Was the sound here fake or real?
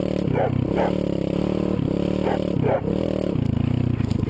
real